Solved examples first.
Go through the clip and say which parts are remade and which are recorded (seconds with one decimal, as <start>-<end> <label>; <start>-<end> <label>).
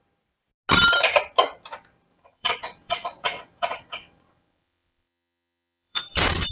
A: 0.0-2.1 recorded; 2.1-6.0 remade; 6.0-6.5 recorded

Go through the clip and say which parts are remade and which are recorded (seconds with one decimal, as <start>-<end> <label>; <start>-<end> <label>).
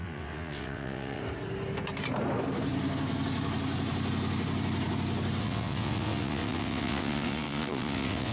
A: 0.0-1.2 remade; 1.2-5.4 recorded; 5.4-8.3 remade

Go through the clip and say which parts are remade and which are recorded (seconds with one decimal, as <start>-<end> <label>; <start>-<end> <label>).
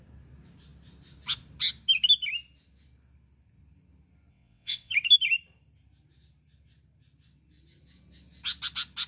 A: 0.0-4.3 recorded; 4.3-4.9 remade; 4.9-9.1 recorded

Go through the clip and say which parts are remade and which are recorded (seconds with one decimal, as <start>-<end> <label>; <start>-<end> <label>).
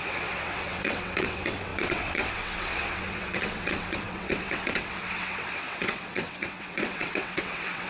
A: 0.0-7.9 remade